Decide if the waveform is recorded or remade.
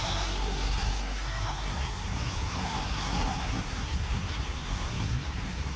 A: remade